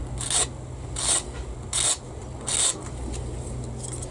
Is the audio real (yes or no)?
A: yes